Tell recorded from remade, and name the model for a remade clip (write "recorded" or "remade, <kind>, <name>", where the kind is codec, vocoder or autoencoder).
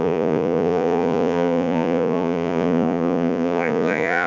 remade, vocoder, Vocos